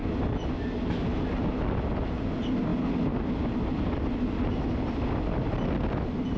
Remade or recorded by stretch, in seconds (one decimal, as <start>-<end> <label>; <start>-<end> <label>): 0.0-6.4 recorded